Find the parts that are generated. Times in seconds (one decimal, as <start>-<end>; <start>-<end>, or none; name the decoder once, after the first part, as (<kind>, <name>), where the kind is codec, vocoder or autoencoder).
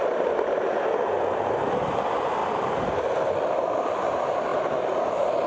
none